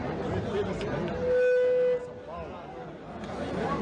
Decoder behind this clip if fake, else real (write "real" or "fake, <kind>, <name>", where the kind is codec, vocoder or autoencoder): real